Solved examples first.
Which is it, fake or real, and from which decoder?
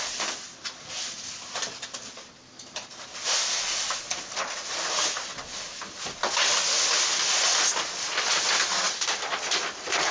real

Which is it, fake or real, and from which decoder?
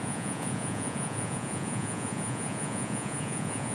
fake, vocoder, Vocos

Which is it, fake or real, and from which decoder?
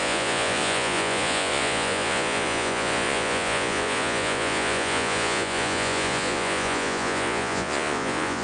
fake, vocoder, Vocos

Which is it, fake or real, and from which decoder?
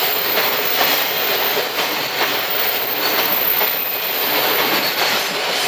real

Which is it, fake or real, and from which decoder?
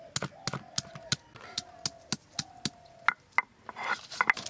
real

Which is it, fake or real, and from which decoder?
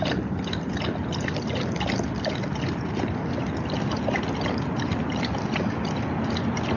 real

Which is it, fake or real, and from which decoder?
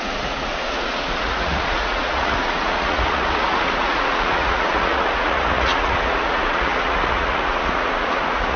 fake, vocoder, Vocos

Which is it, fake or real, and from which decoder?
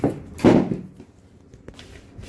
real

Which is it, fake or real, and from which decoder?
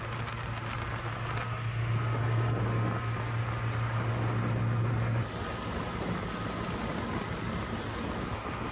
real